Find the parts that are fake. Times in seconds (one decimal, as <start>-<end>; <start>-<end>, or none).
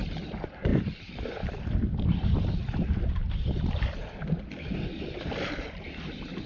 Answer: 0.7-4.2